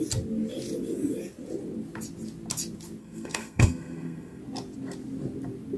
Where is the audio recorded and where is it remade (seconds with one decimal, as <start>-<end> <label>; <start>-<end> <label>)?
0.0-3.0 recorded; 3.0-4.4 remade; 4.4-5.8 recorded